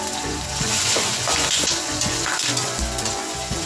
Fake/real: fake